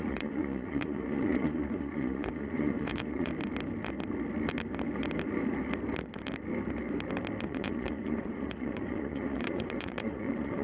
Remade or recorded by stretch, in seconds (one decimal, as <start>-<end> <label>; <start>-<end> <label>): 0.0-3.3 remade; 3.3-7.4 recorded; 7.4-10.6 remade